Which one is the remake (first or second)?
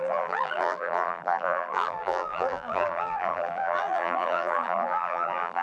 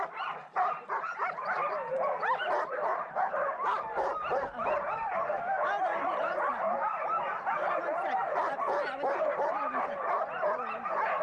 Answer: first